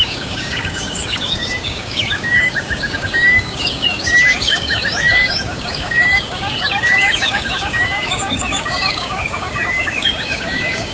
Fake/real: fake